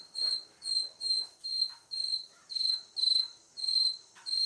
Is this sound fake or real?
fake